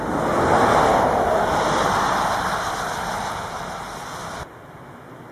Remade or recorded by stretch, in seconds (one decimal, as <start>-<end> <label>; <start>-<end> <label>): 0.0-5.3 recorded

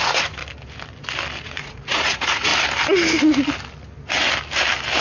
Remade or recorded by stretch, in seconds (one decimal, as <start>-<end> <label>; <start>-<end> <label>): 0.0-0.4 remade; 0.4-1.4 recorded; 1.4-2.5 remade; 2.5-5.0 recorded

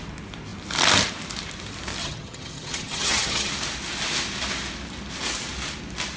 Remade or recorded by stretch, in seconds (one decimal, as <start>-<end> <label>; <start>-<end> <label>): 0.0-2.0 recorded; 2.0-3.5 remade; 3.5-6.2 recorded

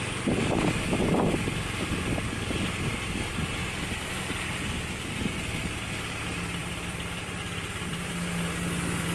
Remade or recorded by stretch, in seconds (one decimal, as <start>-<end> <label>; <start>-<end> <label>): 0.0-6.6 recorded; 6.6-8.1 remade; 8.1-9.1 recorded

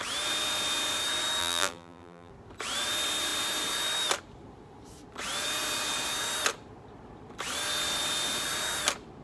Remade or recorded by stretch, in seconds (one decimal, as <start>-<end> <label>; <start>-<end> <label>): 0.0-1.4 recorded; 1.4-2.3 remade; 2.3-9.2 recorded

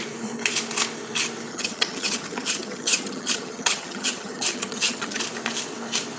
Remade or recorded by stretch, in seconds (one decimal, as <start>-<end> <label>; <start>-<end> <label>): 0.0-1.5 recorded; 1.5-5.2 remade; 5.2-6.2 recorded